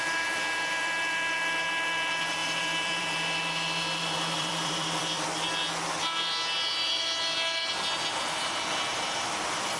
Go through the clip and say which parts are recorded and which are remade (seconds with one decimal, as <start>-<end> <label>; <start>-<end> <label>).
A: 0.0-5.6 remade; 5.6-9.8 recorded